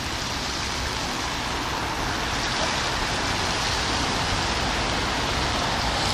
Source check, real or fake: real